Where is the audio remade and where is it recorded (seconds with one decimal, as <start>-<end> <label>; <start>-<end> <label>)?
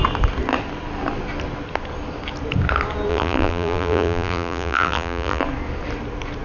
0.0-3.1 recorded; 3.1-5.4 remade; 5.4-6.4 recorded